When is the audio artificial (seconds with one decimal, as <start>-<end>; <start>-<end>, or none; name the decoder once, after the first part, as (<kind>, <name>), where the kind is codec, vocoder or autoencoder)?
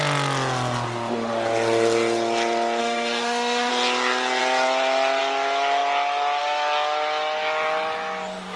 2.8-3.7 (autoencoder, DAC-VAE)